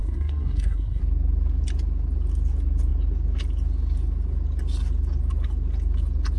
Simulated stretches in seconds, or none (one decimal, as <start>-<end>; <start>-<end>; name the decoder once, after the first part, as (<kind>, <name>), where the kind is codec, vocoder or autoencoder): 0.0-1.0 (codec, SNAC)